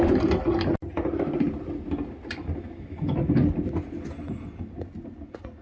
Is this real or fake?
real